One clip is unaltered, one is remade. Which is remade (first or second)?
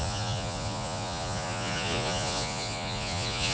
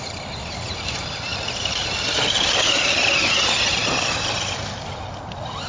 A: first